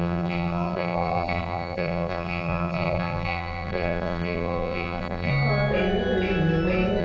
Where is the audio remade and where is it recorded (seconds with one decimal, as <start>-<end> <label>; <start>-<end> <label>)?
0.0-5.3 remade; 5.3-7.0 recorded